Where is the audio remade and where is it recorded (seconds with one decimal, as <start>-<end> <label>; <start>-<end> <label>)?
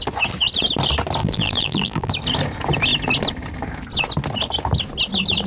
0.0-1.2 recorded; 1.2-2.1 remade; 2.1-5.5 recorded